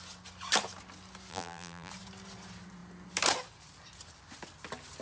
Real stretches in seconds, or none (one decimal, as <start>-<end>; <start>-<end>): 0.0-1.3; 1.9-5.0